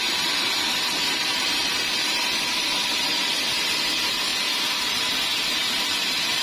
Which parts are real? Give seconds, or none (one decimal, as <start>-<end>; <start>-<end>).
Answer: 4.3-4.8; 5.6-6.4